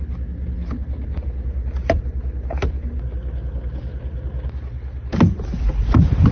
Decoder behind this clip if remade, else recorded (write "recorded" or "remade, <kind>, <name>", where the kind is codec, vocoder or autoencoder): recorded